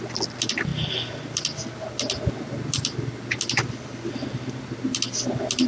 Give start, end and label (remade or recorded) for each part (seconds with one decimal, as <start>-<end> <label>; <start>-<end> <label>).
0.0-5.7 recorded